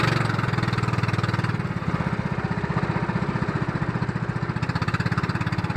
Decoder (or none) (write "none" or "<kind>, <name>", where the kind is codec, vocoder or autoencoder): none